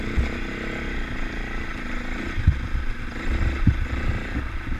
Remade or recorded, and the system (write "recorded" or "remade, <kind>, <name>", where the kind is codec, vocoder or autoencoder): recorded